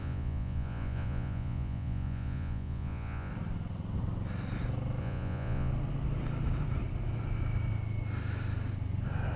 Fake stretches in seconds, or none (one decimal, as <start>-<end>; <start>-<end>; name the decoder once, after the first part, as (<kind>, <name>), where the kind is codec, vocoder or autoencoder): 0.0-3.3 (vocoder, Vocos); 5.0-5.7